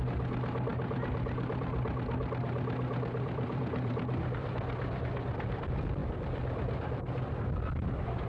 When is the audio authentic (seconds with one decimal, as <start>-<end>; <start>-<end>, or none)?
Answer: 0.0-0.7; 5.6-6.0